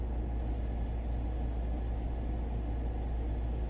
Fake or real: real